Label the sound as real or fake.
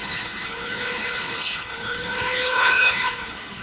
fake